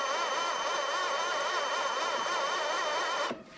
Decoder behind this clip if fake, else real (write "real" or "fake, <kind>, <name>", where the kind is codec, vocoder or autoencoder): fake, vocoder, BigVGAN v2